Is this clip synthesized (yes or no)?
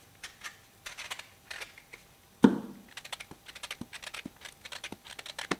no